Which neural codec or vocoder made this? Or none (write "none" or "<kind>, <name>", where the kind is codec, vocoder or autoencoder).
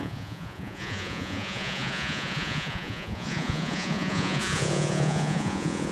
vocoder, Vocos